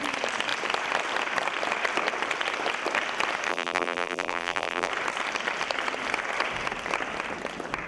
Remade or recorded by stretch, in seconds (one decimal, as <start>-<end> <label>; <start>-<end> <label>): 0.0-3.5 recorded; 3.5-4.9 remade; 4.9-7.9 recorded